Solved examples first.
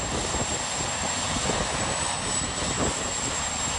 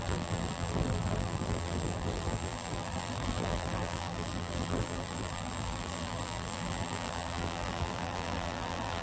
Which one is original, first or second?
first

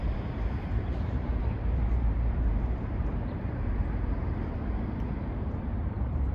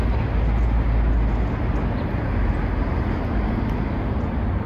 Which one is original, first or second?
second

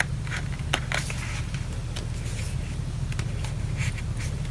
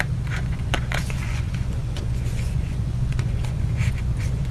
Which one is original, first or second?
first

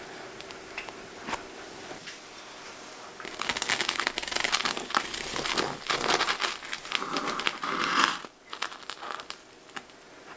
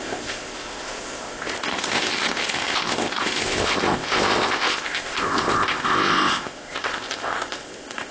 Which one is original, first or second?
first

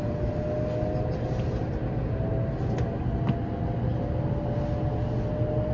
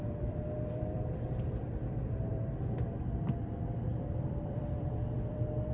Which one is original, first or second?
first